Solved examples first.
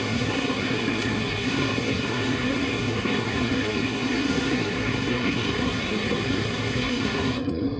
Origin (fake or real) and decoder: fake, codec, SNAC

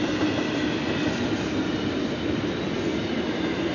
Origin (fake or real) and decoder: real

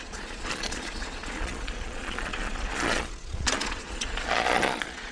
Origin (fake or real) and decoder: fake, vocoder, Vocos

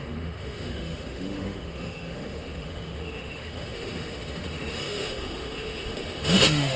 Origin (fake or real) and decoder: fake, autoencoder, DAC-VAE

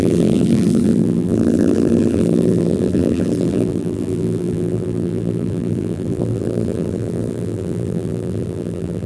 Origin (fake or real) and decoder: fake, vocoder, BigVGAN v2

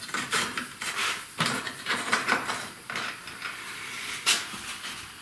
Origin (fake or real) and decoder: fake, vocoder, BigVGAN v2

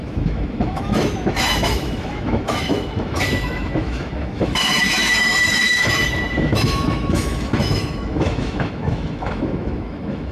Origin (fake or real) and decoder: fake, autoencoder, DAC-VAE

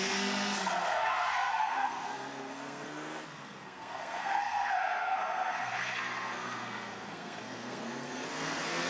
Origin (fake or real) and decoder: fake, codec, SNAC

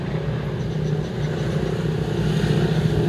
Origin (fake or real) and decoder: real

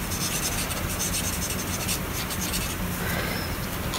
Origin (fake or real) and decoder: real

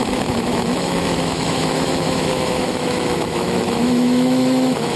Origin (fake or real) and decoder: fake, autoencoder, DAC-VAE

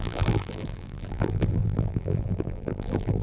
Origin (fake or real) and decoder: fake, vocoder, BigVGAN v2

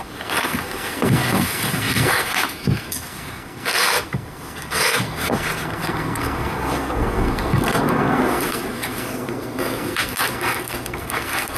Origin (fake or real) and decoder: fake, codec, SNAC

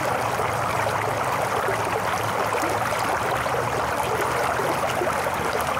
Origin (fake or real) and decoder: real